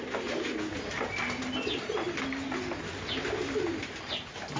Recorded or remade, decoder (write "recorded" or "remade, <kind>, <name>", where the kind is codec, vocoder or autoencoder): recorded